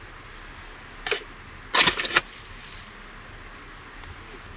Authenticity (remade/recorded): recorded